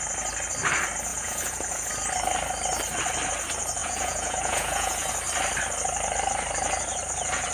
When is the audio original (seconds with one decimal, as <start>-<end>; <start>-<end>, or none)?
0.0-1.1; 1.9-3.8; 5.1-7.5